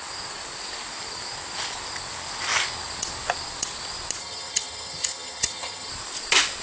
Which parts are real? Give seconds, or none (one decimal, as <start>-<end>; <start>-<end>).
0.0-4.2; 5.9-6.6